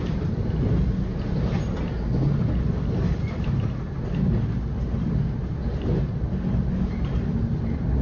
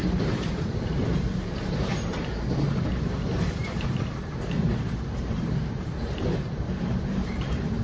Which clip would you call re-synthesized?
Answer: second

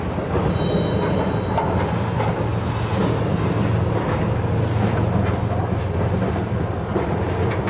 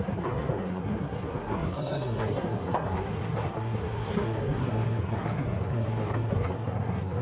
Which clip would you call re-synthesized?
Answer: second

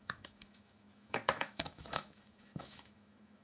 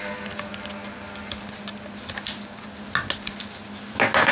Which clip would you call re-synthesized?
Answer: first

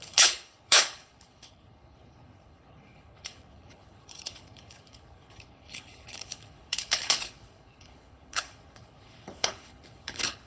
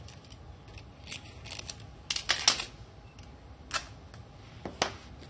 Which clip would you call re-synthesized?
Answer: first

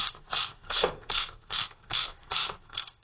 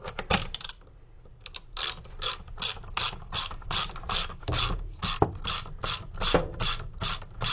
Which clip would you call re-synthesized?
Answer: first